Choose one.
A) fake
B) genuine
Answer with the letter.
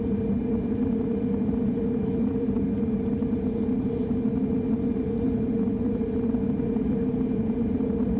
A